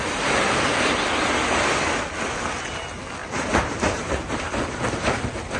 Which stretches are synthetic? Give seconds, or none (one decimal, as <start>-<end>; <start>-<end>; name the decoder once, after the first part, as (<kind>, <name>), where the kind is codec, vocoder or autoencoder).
0.0-1.2 (vocoder, BigVGAN v2); 3.2-4.5